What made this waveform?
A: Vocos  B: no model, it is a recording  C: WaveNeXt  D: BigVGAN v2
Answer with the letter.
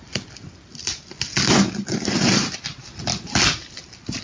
B